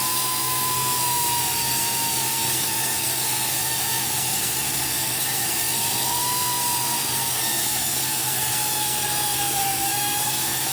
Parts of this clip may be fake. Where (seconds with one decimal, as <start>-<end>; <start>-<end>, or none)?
0.0-10.7